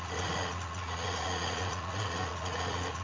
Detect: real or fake fake